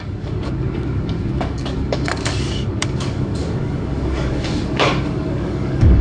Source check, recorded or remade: remade